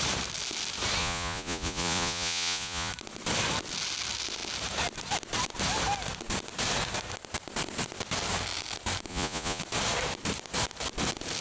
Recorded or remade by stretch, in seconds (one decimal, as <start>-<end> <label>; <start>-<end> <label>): 0.0-1.0 recorded; 1.0-2.9 remade; 2.9-9.1 recorded; 9.1-9.6 remade; 9.6-11.4 recorded